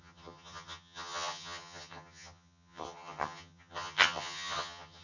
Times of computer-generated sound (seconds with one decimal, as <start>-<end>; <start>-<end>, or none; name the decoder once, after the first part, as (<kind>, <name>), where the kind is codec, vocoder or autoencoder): 0.0-5.0 (vocoder, HiFi-GAN)